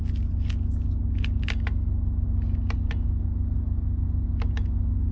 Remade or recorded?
recorded